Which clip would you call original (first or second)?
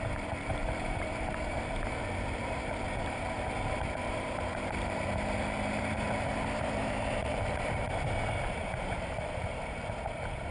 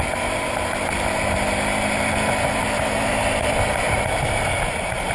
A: second